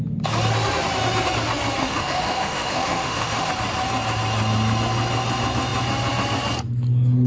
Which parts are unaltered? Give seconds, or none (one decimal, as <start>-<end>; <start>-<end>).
0.0-1.8; 3.5-7.3